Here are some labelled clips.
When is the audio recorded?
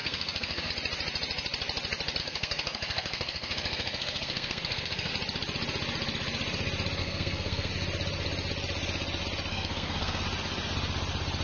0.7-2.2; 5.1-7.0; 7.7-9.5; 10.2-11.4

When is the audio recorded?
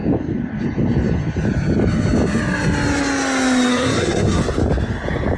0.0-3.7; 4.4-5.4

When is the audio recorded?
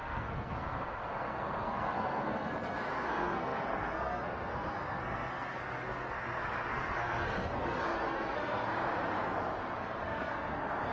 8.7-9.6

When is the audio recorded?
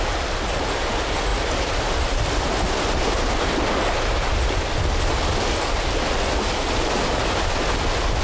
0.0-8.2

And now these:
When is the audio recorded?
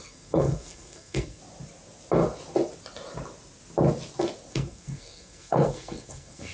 1.4-4.5